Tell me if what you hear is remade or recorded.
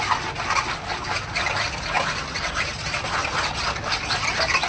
recorded